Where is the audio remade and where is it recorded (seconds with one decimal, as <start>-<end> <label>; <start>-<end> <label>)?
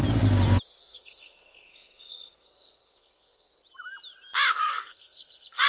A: 0.0-0.8 recorded; 0.8-3.5 remade; 3.5-4.5 recorded; 4.5-5.7 remade